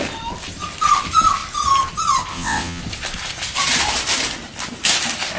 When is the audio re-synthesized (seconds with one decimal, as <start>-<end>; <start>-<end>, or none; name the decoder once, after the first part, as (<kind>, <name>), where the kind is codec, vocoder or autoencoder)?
2.3-2.8 (vocoder, WaveNeXt)